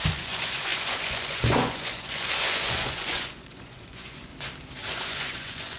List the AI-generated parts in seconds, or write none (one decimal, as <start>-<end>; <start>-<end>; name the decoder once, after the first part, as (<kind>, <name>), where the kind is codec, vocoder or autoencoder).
0.0-4.3 (vocoder, Vocos); 4.9-5.8